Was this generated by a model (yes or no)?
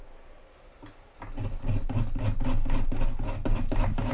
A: no